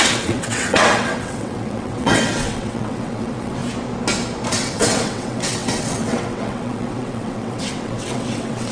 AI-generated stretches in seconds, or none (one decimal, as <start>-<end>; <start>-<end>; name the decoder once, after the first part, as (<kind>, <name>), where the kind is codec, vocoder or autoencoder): 0.0-3.6 (vocoder, WaveNeXt); 4.5-8.7